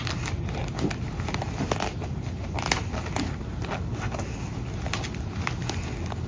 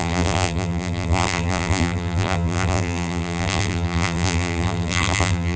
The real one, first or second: first